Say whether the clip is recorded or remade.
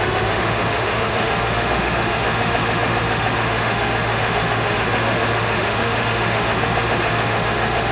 remade